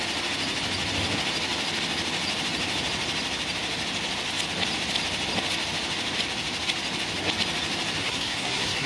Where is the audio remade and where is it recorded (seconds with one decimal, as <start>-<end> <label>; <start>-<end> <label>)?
0.0-8.0 recorded; 8.0-8.9 remade